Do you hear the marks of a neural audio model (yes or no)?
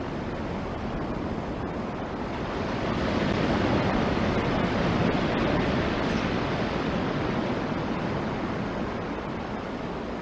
no